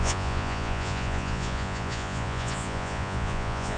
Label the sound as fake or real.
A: fake